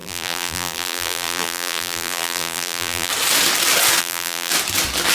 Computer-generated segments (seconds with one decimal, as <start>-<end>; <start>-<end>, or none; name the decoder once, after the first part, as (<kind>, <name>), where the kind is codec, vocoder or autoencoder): 0.0-3.1 (vocoder, BigVGAN v2); 4.0-4.5